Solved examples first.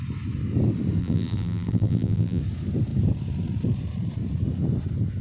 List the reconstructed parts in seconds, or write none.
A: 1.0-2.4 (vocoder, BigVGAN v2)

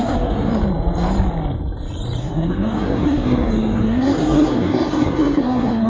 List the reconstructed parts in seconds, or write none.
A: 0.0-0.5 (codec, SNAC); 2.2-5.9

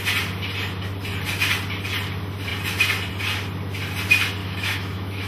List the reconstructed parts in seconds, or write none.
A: 4.4-5.3 (autoencoder, DAC-VAE)

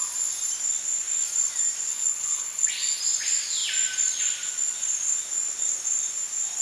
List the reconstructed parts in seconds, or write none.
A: 1.9-3.0 (codec, HILCodec)

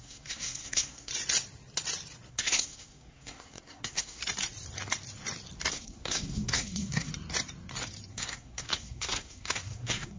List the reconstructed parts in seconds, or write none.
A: 0.0-1.1 (codec, SNAC); 2.3-4.2; 5.7-7.1; 8.1-10.2